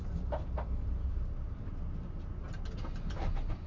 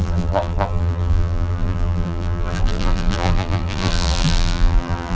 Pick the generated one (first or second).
second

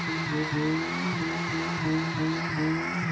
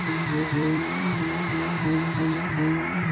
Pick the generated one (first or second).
second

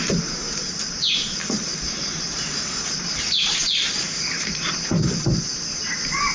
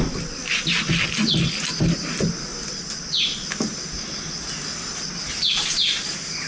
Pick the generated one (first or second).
first